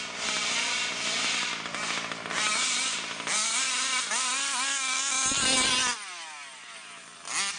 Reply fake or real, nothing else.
real